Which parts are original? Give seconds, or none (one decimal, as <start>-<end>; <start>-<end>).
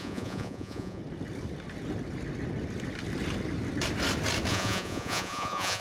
1.0-4.5